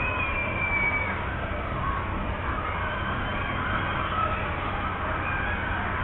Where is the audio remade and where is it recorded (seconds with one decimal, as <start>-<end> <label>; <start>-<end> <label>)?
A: 0.0-6.0 recorded